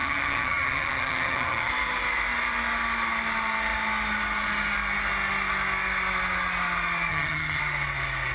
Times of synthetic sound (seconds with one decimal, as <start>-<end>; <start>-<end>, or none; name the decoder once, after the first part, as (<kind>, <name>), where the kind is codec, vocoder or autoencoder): 0.0-1.7 (vocoder, HiFi-GAN); 7.1-7.6